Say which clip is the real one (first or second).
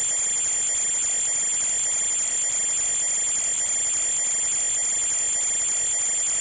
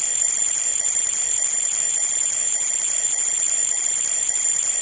first